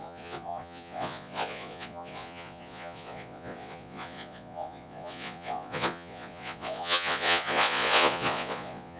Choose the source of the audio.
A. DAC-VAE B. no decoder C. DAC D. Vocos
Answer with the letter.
D